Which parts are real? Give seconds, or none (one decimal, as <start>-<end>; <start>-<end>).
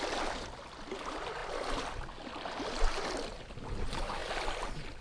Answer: 0.0-5.0